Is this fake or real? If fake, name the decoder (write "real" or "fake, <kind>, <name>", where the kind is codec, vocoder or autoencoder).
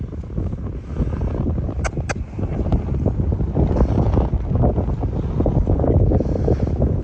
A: real